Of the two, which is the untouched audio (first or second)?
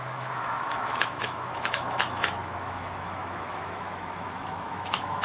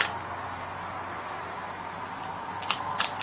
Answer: second